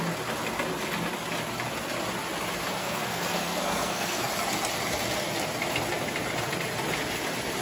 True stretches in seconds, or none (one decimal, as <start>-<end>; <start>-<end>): 0.0-2.8; 4.3-7.6